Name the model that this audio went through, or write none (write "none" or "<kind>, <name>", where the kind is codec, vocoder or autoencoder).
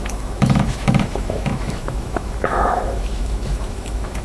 autoencoder, DAC-VAE